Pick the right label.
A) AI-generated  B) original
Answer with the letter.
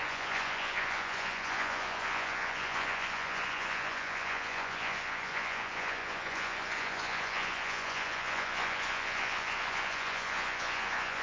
A